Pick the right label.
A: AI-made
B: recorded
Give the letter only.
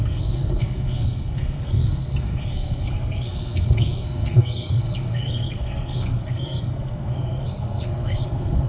A